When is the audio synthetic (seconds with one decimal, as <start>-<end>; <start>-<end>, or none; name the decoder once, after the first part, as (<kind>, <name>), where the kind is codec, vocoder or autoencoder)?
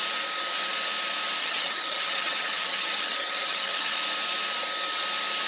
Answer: 1.4-4.0 (vocoder, HiFi-GAN)